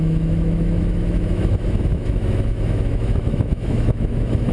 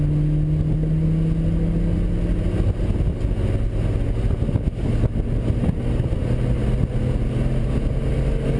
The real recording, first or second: second